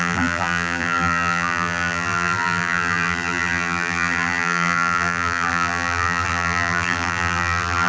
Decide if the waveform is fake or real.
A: fake